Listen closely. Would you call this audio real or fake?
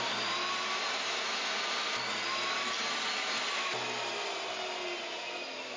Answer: real